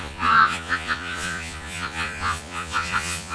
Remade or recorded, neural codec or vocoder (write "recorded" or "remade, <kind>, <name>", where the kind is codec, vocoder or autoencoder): remade, vocoder, Vocos